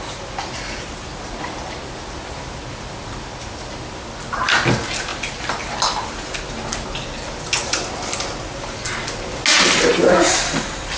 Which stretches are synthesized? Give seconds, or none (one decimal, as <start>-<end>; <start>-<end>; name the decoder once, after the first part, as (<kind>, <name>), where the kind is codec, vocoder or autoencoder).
none